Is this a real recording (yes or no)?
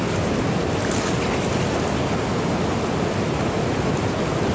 yes